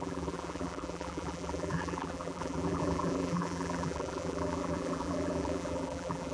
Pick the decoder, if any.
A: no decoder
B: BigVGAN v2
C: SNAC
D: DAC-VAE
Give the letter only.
B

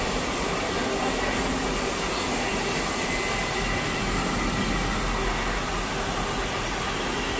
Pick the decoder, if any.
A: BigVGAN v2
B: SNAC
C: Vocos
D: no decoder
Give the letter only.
D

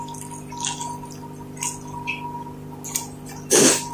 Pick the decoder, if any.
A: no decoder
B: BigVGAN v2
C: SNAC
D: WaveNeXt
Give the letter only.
A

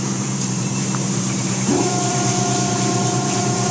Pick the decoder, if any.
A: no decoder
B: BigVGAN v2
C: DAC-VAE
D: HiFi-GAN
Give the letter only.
B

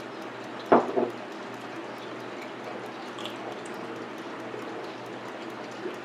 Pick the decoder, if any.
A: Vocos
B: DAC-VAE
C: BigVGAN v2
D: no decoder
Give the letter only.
D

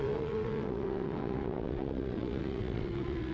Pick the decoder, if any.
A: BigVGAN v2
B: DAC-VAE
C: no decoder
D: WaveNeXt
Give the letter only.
D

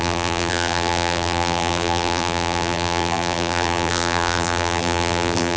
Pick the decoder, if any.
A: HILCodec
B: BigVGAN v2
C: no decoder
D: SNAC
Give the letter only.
B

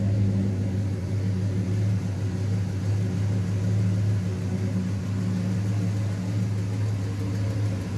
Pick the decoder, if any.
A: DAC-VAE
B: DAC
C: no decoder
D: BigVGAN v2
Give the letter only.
C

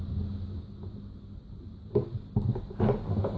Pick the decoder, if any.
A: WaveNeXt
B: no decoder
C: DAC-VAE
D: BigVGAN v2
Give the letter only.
B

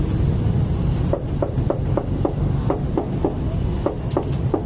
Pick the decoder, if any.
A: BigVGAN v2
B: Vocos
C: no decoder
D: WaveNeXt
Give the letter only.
C